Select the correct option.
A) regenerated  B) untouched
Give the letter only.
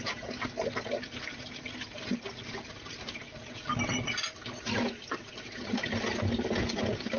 B